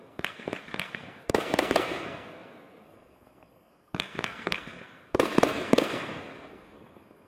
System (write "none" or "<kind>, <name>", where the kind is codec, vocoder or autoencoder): codec, SNAC